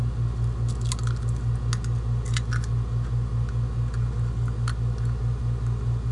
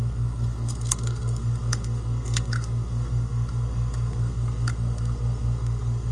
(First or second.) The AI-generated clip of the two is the second